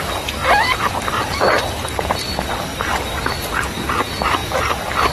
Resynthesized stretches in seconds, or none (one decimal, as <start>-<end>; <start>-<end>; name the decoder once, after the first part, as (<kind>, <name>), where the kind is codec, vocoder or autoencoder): 2.7-3.4 (vocoder, BigVGAN v2); 4.4-5.1